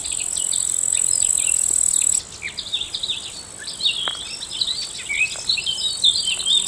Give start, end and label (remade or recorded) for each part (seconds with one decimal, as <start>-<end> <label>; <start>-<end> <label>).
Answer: 0.0-6.7 recorded